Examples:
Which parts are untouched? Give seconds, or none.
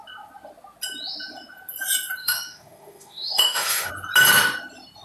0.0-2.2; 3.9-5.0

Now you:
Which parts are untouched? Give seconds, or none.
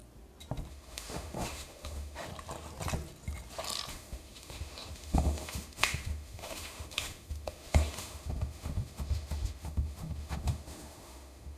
0.0-0.7; 2.3-3.9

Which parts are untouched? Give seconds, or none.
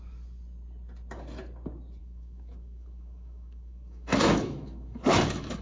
0.0-2.0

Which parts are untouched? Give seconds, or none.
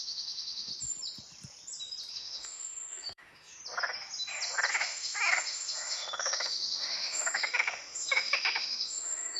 0.7-2.1; 3.6-4.7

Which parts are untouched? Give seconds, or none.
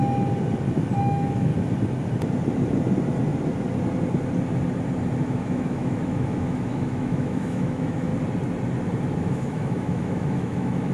0.0-1.0; 1.5-5.2; 8.1-9.2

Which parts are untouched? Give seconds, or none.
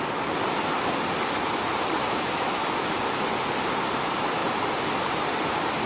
0.0-2.0; 2.7-5.9